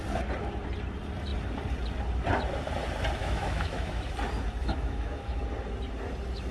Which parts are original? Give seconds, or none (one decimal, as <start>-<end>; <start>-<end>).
0.0-3.2; 4.1-4.6; 5.4-6.5